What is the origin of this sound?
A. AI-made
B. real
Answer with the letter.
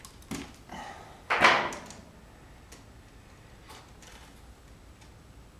B